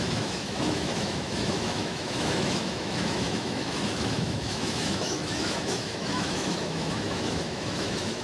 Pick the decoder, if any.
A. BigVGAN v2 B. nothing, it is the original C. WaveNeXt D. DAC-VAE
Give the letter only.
D